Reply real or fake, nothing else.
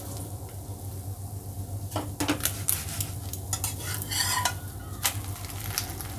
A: real